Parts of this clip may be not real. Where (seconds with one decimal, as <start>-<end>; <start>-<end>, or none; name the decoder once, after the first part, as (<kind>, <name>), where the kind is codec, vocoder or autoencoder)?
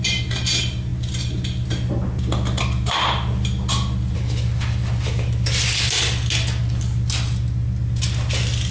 none